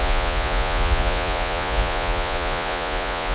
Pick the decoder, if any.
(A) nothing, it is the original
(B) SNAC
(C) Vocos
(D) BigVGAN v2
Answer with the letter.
C